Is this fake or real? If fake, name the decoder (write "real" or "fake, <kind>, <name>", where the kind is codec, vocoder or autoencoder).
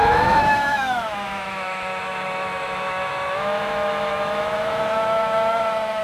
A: fake, autoencoder, DAC-VAE